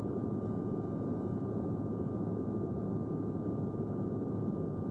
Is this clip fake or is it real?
real